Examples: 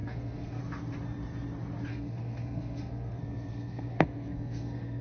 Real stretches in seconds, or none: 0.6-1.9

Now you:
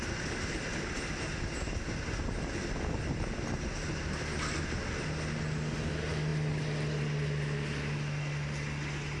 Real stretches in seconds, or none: 0.0-9.2

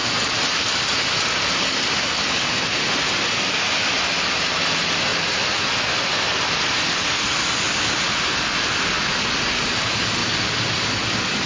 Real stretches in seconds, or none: 0.0-11.5

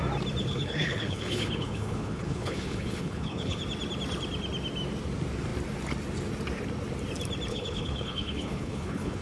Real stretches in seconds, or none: 0.0-0.4; 3.6-7.5

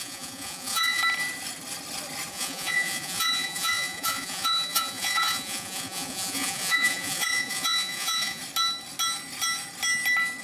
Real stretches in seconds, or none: 1.0-2.3; 8.4-10.4

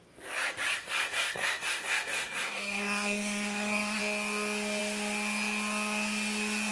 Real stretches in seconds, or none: 0.0-0.8; 4.0-6.7

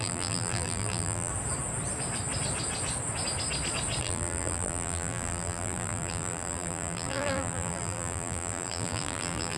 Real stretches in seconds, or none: 1.3-4.0